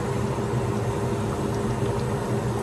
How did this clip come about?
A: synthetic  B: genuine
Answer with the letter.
B